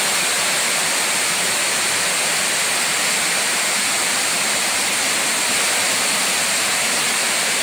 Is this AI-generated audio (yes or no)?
no